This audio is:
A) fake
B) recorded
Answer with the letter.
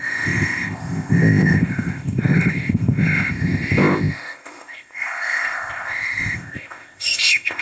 A